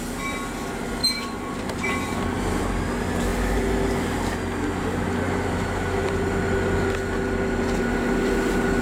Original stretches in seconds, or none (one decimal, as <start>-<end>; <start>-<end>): 0.0-1.0; 2.6-8.8